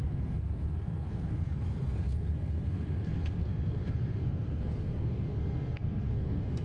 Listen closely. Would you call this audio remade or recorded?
remade